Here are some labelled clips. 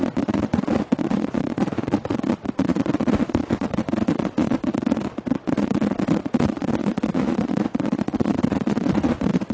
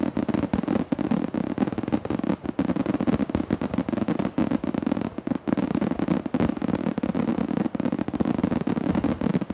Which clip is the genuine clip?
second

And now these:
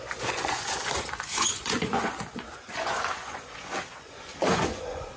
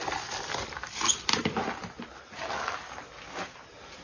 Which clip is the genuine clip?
second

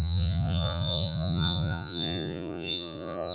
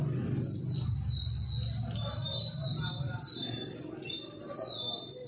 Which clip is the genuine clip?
second